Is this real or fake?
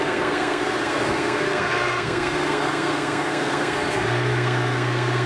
fake